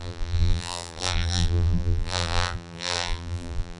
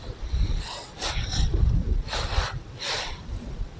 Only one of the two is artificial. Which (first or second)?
first